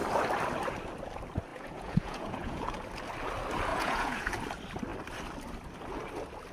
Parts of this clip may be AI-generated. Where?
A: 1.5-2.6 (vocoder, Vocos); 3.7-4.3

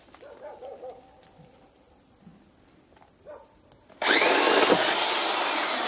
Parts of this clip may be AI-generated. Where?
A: none

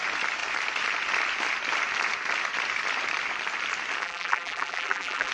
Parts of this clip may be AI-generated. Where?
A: 4.0-5.3 (vocoder, BigVGAN v2)

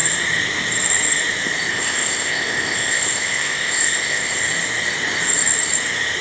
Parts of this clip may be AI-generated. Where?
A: 1.7-4.4 (codec, ZipCodec)

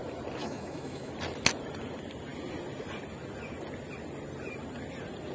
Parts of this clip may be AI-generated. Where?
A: 0.4-1.1 (autoencoder, DAC-VAE)

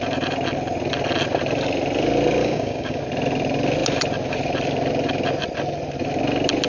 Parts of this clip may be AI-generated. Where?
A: 2.4-3.0 (codec, DAC)